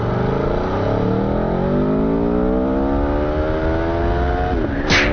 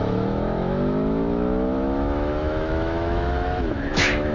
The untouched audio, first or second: first